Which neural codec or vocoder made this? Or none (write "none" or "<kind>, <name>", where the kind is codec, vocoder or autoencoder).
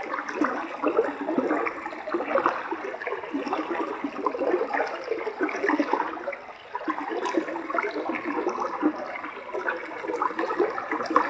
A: none